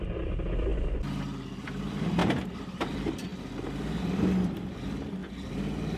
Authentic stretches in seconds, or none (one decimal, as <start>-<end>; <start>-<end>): 0.7-1.2; 2.2-2.9; 3.3-4.0; 5.2-6.0